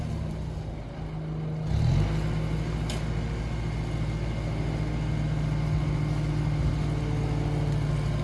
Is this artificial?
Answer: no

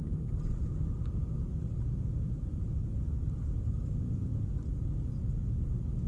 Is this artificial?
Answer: no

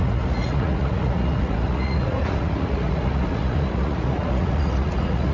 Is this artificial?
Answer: yes